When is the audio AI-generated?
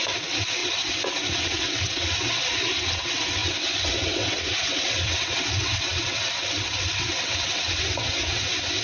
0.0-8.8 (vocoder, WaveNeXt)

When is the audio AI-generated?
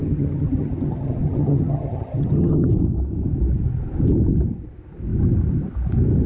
0.0-2.7 (vocoder, HiFi-GAN)